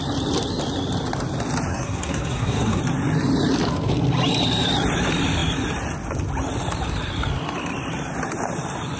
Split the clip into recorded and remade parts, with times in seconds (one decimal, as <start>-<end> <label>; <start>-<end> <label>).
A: 0.0-1.7 recorded; 1.7-2.8 remade; 2.8-9.0 recorded